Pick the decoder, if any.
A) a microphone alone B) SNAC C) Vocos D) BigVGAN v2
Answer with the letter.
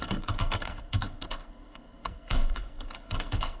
B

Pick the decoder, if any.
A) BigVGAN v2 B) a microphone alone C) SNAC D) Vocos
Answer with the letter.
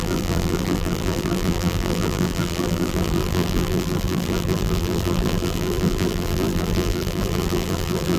A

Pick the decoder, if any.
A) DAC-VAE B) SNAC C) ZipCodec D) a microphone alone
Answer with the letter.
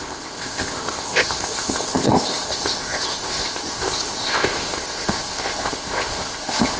C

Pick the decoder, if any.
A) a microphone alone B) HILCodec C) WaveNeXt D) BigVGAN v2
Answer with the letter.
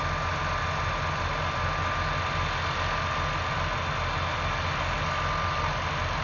A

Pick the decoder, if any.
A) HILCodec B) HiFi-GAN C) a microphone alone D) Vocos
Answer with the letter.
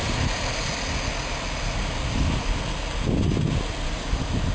C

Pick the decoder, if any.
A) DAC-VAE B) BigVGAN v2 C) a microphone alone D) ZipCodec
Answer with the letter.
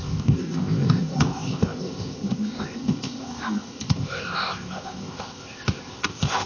D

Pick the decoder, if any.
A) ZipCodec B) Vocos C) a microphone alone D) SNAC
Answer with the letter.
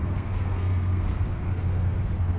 D